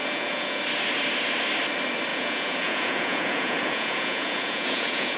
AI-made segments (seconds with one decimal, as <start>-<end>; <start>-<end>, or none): 0.0-0.6; 2.1-5.2